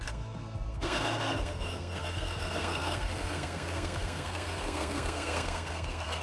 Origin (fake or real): fake